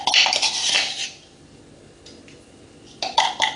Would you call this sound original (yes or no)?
yes